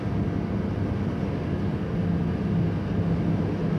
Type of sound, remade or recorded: recorded